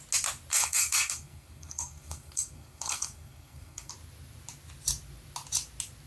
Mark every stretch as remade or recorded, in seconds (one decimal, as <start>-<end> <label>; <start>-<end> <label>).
0.0-0.5 recorded; 0.5-3.9 remade; 3.9-6.1 recorded